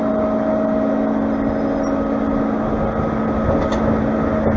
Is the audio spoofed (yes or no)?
no